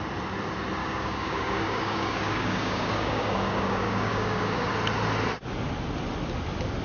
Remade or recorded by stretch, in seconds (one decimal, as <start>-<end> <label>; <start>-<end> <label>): 0.0-0.8 recorded; 0.8-4.7 remade; 4.7-6.8 recorded